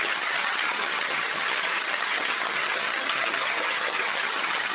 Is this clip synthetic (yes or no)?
yes